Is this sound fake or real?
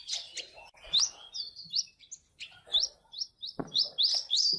real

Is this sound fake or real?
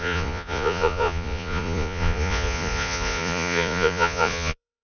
fake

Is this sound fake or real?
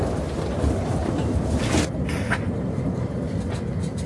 real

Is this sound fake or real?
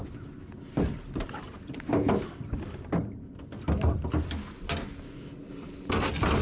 real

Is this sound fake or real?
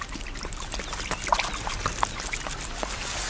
real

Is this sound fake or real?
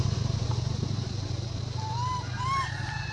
real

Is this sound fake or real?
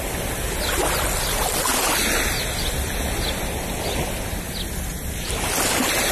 real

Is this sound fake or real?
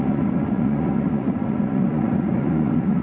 fake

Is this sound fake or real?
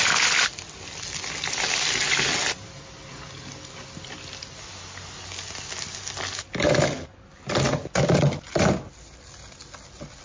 real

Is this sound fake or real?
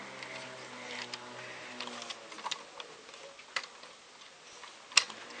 real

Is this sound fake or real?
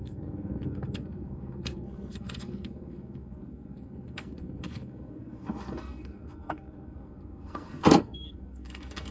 fake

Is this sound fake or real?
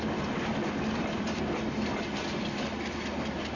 real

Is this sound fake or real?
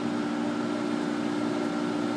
real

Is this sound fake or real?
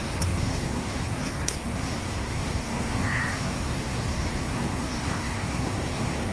fake